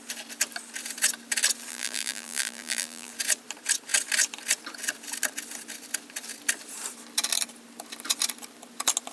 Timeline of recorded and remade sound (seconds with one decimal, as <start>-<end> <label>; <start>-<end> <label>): 0.0-1.7 recorded; 1.7-3.1 remade; 3.1-9.1 recorded